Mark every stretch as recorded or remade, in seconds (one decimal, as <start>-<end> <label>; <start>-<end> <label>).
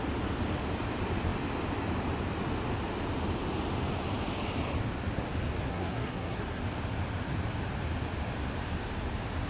0.0-5.7 recorded; 5.7-6.6 remade; 6.6-9.5 recorded